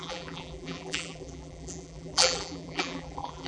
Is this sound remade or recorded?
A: remade